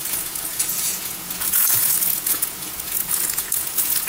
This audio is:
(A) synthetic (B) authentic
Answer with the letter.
A